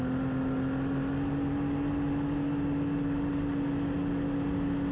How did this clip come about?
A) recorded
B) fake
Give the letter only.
A